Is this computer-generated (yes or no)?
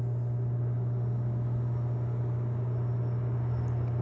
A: no